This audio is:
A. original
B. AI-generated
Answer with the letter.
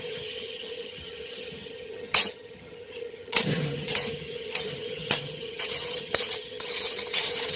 B